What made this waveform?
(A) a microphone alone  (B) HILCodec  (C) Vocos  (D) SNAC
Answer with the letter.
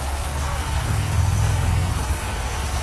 D